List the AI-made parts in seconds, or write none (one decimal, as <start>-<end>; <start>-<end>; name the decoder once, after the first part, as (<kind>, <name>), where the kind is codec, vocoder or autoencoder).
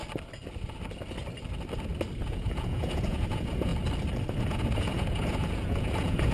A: 2.2-3.7 (vocoder, Vocos); 4.4-6.3